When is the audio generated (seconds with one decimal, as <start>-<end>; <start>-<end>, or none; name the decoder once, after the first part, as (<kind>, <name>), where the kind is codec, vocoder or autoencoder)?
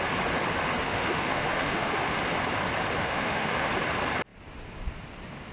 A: 0.8-2.2 (autoencoder, DAC-VAE); 3.0-3.7